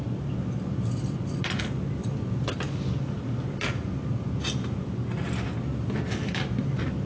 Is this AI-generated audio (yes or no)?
no